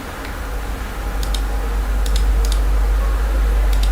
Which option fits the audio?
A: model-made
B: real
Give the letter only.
B